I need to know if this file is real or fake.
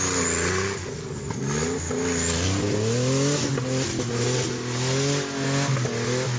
real